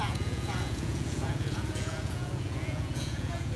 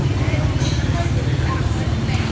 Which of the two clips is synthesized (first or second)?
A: first